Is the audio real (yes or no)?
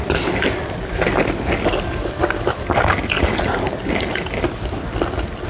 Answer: yes